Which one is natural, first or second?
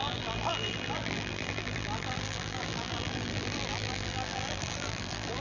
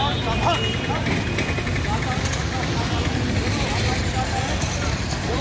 second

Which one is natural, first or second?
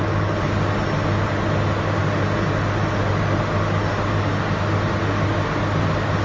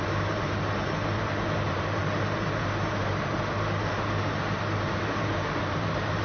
first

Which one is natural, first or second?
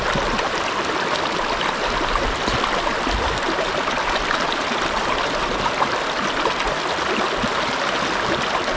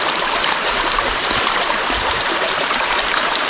first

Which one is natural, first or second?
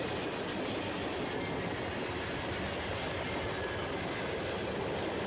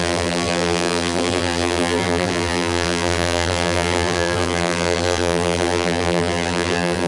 first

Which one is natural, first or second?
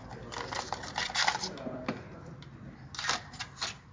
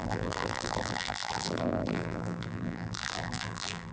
first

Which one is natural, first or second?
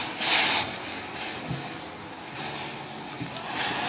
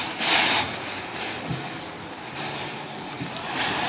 first